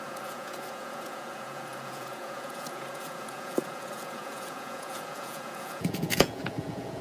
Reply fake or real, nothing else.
fake